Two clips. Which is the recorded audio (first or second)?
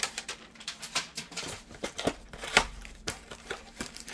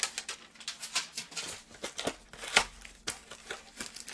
second